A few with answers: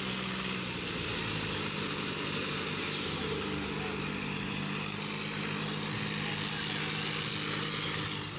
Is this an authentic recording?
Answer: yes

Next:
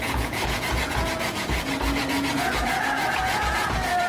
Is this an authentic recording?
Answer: no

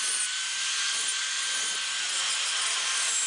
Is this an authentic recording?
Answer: yes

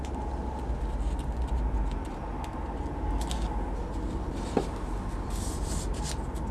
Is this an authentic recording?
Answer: yes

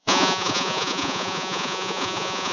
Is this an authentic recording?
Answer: no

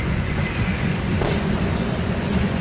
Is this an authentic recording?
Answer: no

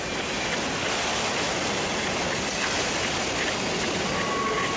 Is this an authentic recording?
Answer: yes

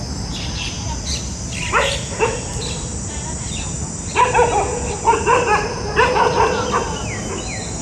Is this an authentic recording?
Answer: yes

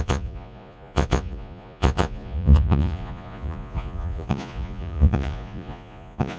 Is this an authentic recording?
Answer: no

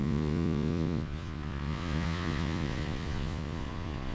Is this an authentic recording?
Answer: no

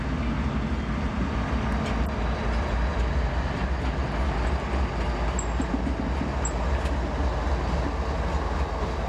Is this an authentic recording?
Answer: yes